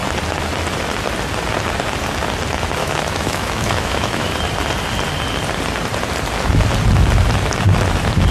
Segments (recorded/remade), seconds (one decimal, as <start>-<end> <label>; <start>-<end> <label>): 0.0-2.8 recorded; 2.8-4.3 remade; 4.3-8.3 recorded